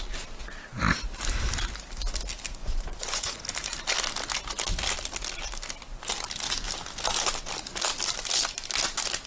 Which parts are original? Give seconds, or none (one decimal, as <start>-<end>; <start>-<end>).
0.0-2.6; 3.4-9.3